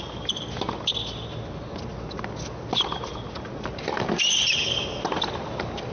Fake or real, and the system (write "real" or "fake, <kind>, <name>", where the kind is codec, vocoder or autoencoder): real